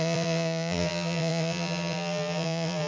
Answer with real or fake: fake